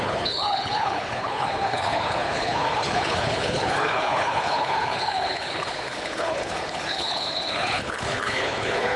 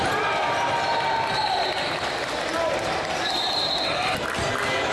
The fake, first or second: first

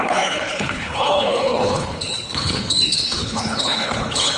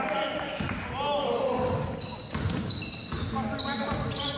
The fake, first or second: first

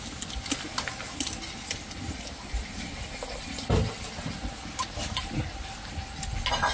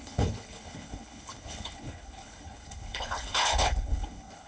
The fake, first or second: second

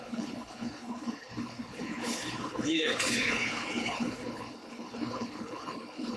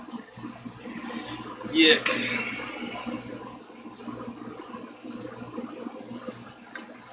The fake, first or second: first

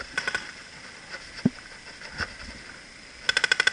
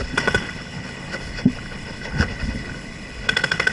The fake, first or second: second